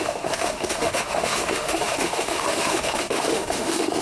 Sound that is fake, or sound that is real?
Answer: fake